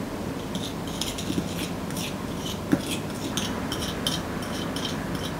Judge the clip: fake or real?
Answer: real